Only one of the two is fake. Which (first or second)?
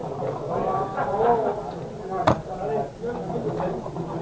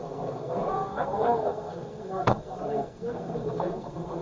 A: second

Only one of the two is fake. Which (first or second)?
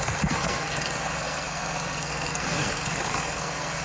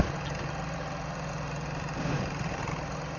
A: first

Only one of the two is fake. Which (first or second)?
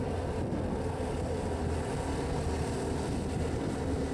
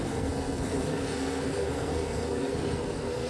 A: second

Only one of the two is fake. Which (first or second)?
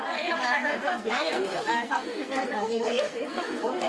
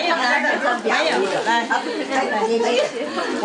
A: first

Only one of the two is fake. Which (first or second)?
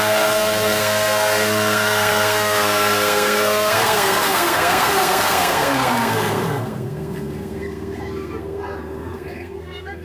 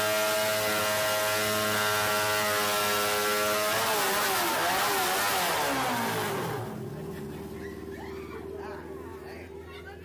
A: first